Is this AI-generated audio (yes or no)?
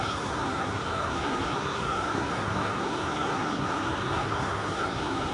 yes